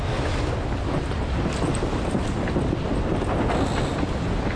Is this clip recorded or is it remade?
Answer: recorded